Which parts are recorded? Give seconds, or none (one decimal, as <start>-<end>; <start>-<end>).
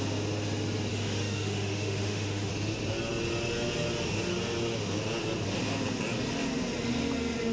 0.0-0.9; 2.5-7.5